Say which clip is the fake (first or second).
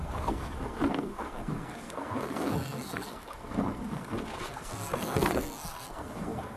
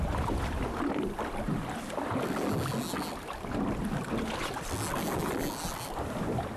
first